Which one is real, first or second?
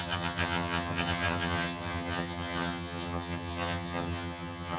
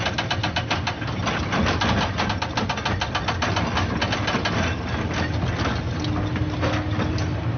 second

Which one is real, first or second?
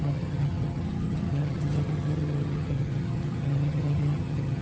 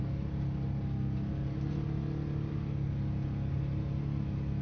second